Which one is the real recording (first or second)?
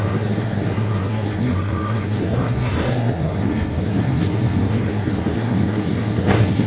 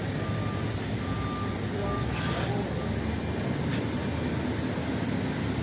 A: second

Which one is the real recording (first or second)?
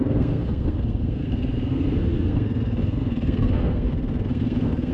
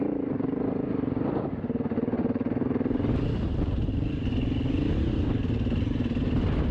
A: second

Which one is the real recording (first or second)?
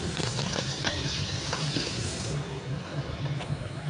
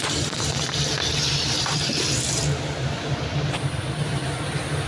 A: second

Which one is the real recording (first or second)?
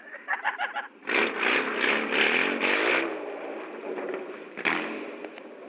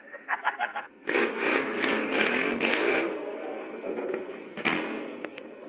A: first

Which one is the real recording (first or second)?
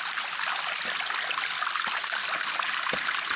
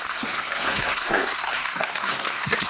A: first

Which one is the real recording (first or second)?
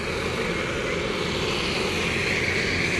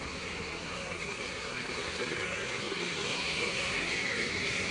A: first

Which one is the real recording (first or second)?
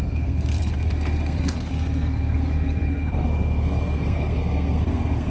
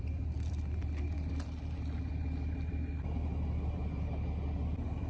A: second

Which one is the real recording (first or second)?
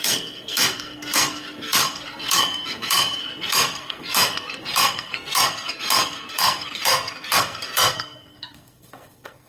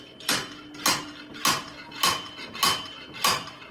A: second